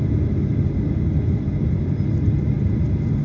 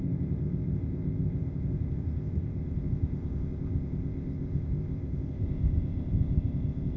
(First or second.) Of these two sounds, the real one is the first